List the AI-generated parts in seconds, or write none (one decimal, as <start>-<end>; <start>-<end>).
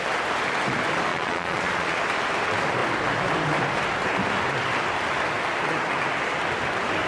1.1-2.0